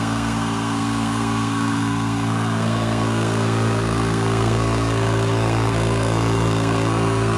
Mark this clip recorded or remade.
remade